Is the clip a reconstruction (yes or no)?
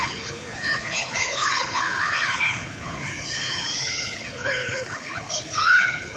yes